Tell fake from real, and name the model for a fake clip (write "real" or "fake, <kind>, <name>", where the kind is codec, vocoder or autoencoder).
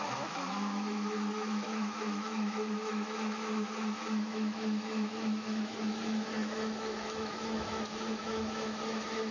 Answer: fake, autoencoder, DAC-VAE